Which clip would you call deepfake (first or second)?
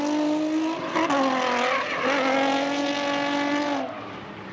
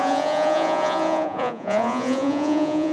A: second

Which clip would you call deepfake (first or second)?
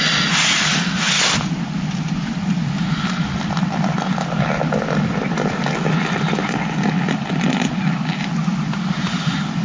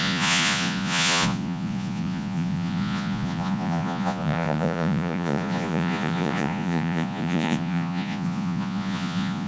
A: second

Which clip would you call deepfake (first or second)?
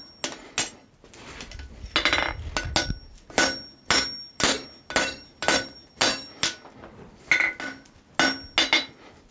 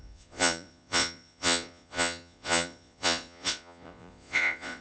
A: second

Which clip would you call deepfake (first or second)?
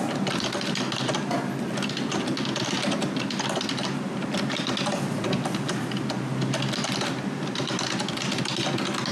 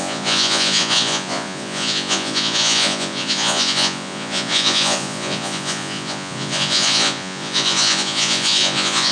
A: second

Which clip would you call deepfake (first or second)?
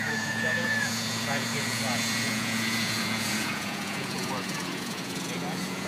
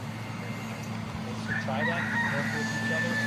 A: first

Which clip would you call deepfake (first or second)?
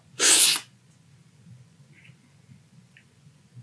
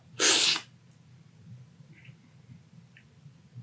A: first